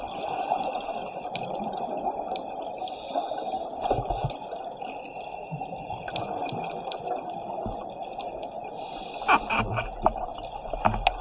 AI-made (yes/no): no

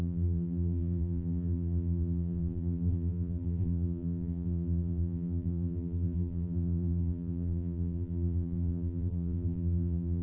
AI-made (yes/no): yes